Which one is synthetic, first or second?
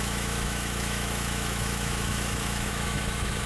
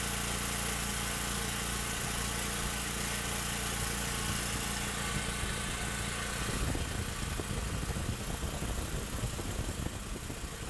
first